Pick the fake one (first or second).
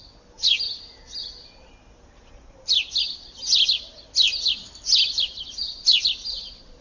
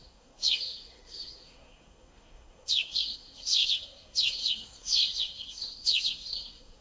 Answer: second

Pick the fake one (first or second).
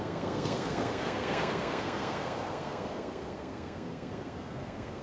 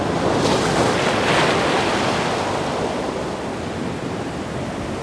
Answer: first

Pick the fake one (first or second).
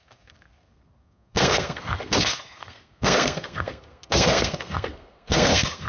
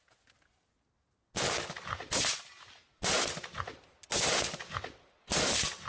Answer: first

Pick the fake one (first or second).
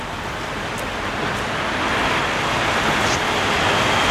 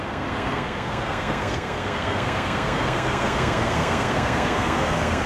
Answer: second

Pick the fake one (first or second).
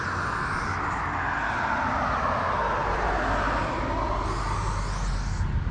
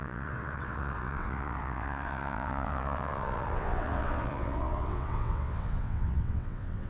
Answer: second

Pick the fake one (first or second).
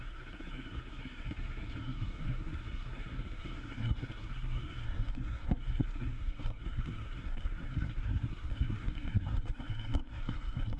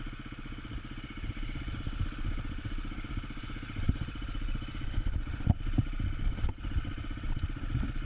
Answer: first